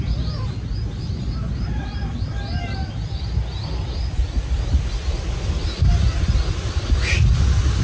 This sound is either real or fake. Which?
real